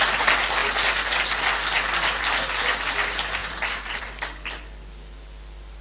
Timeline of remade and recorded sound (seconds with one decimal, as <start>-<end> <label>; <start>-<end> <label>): 0.0-3.4 recorded; 3.4-4.0 remade; 4.0-5.8 recorded